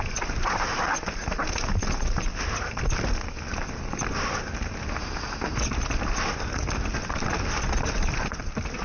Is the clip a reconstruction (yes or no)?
no